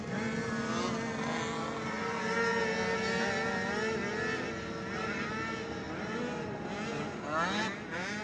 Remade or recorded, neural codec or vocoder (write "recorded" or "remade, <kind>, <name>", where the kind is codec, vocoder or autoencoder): recorded